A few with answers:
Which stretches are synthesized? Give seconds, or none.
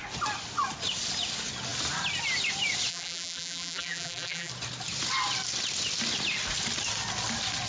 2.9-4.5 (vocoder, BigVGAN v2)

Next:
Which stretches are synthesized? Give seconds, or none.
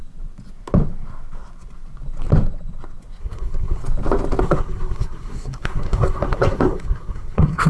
3.2-3.8 (codec, SNAC); 4.4-7.7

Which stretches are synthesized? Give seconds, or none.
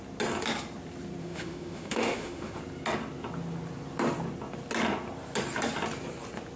1.2-2.6 (autoencoder, DAC-VAE)